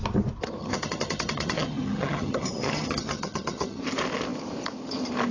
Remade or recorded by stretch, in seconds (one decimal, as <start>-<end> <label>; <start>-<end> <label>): 0.0-0.6 recorded; 0.6-3.8 remade; 3.8-5.3 recorded